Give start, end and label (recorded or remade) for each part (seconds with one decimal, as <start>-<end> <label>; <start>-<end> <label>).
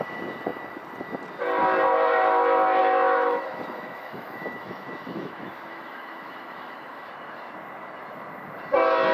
0.0-2.8 recorded; 2.8-7.1 remade; 7.1-9.1 recorded